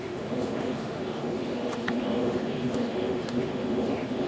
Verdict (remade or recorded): remade